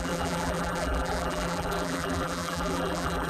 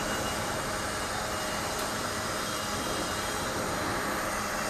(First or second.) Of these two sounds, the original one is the second